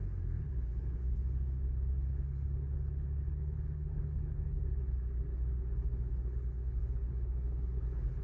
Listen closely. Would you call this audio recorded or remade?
remade